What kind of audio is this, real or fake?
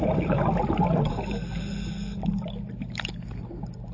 real